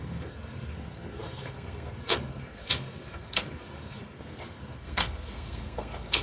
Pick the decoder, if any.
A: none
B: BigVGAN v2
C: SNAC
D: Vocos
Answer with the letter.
C